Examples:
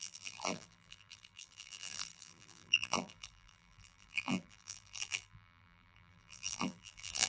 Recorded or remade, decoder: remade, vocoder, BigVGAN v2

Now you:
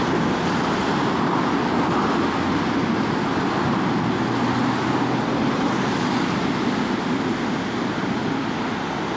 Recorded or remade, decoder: recorded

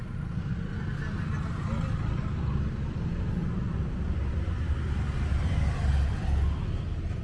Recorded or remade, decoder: recorded